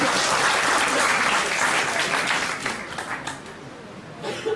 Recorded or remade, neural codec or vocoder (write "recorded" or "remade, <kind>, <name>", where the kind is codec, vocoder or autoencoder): recorded